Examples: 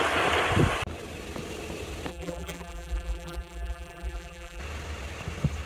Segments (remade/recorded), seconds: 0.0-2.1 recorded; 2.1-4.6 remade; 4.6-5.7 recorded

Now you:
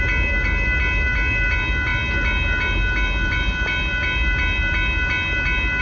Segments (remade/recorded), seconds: 0.0-5.8 recorded

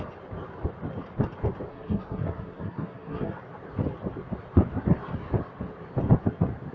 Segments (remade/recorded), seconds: 0.0-1.7 recorded; 1.7-3.3 remade; 3.3-6.7 recorded

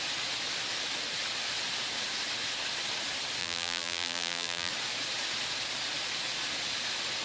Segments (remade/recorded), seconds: 0.0-3.4 recorded; 3.4-4.7 remade; 4.7-7.2 recorded

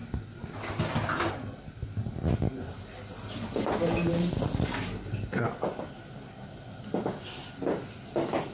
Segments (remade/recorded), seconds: 0.0-8.5 recorded

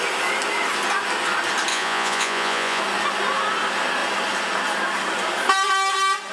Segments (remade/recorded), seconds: 0.0-1.7 recorded; 1.7-2.8 remade; 2.8-6.3 recorded

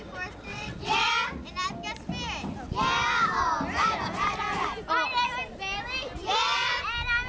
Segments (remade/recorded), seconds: 0.0-0.5 recorded; 0.5-1.1 remade; 1.1-7.3 recorded